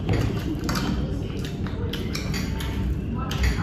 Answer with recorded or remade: recorded